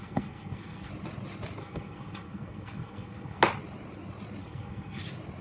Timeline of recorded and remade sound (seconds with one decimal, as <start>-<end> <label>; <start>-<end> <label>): 0.0-0.9 remade; 0.9-1.6 recorded; 1.6-3.4 remade; 3.4-4.4 recorded; 4.4-5.0 remade; 5.0-5.4 recorded